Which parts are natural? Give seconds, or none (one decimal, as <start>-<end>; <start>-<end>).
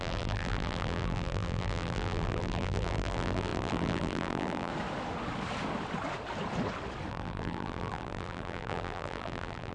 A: 4.7-7.1